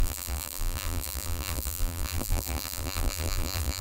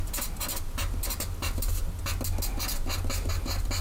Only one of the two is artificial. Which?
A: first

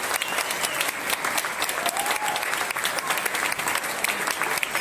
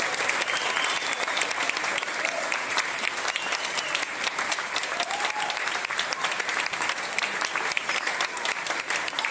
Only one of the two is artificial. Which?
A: second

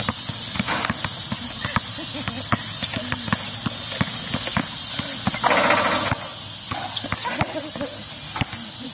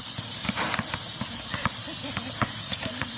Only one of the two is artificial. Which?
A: second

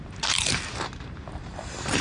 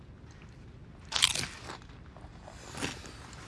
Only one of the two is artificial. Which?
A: first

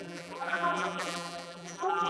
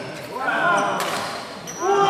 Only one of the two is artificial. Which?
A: first